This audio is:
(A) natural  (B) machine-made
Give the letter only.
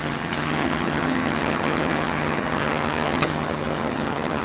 B